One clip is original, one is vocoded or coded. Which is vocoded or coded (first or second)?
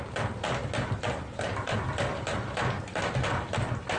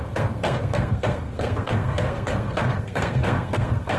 second